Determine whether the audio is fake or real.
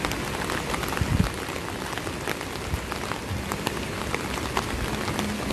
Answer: real